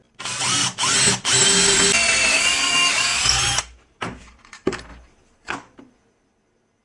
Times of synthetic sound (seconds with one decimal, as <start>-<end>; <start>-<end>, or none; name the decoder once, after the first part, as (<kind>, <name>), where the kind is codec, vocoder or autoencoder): 2.3-3.2 (codec, DAC)

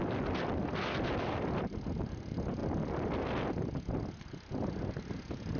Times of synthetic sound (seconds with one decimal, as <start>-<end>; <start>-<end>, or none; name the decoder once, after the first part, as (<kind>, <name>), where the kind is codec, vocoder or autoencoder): none

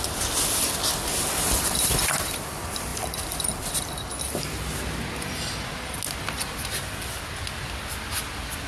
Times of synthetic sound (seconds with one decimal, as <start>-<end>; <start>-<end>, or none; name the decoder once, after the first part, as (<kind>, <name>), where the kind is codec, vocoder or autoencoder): 2.9-4.4 (vocoder, BigVGAN v2)